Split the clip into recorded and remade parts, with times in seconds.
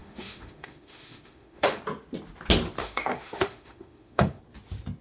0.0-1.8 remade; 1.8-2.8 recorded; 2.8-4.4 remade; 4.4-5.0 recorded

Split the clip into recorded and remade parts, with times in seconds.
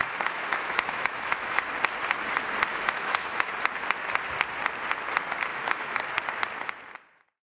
0.0-1.6 remade; 1.6-2.7 recorded; 2.7-3.5 remade; 3.5-5.5 recorded; 5.5-6.1 remade; 6.1-7.5 recorded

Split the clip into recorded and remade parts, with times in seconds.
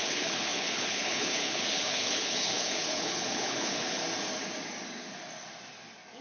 0.0-4.0 remade; 4.0-6.2 recorded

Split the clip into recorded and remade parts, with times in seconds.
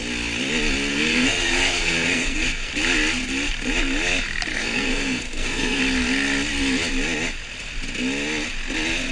0.0-0.9 recorded; 0.9-2.7 remade; 2.7-4.5 recorded; 4.5-5.8 remade; 5.8-9.1 recorded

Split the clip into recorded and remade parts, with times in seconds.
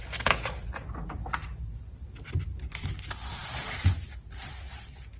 0.0-5.2 recorded